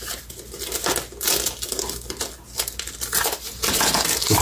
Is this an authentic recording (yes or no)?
yes